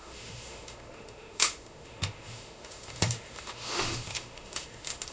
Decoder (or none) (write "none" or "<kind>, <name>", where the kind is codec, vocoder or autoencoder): autoencoder, DAC-VAE